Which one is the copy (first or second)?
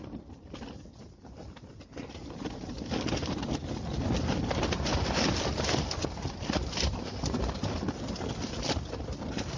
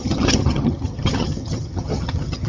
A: second